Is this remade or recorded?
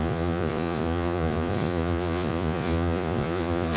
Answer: remade